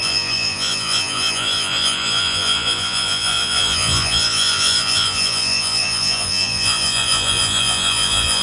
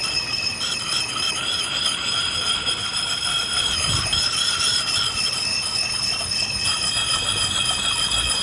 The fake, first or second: first